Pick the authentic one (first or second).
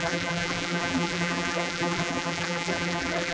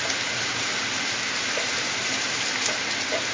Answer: second